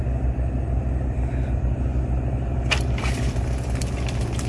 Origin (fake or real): real